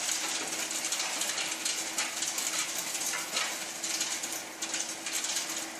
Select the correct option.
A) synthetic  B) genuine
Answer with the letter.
B